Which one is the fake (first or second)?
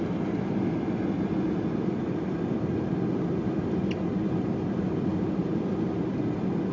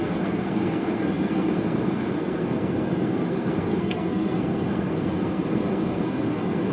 second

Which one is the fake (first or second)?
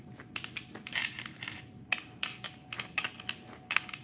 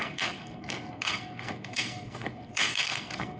second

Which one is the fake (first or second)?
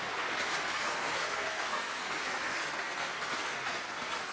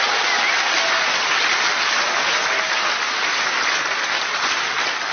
first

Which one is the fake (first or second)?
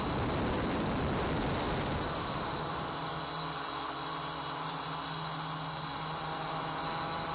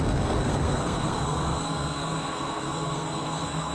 second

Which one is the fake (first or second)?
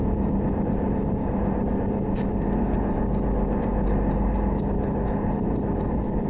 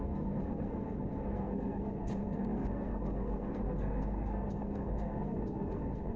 second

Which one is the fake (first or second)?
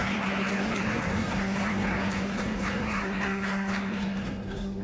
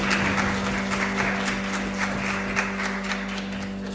first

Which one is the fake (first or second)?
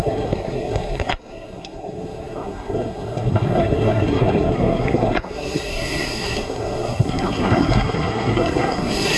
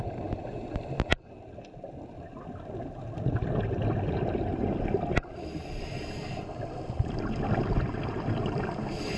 first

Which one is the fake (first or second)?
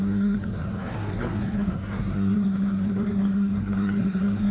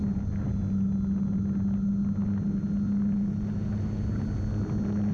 first